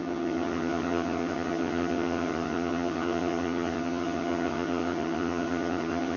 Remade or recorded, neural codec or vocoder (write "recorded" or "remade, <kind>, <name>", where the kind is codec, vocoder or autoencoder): remade, vocoder, HiFi-GAN